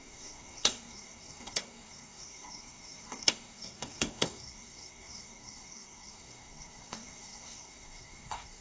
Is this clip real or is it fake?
fake